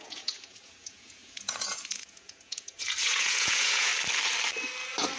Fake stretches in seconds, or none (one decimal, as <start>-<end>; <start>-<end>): 0.0-3.9